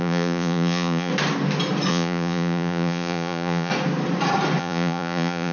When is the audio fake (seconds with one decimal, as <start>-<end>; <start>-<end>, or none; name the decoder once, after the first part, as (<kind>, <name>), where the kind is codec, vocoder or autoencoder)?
0.0-1.1 (vocoder, Vocos); 1.9-3.7; 4.6-5.5